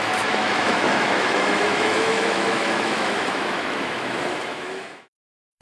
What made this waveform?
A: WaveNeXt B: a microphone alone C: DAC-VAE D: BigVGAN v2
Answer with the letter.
C